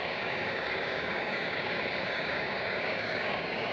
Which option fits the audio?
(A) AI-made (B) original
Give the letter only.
A